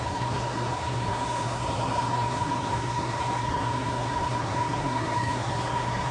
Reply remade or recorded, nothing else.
remade